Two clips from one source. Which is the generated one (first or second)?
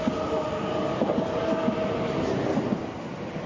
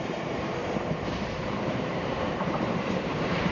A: second